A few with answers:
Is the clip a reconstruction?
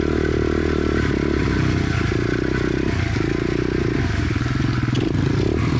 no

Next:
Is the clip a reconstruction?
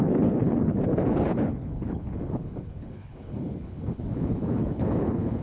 yes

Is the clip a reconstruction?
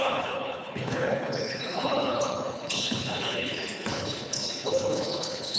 yes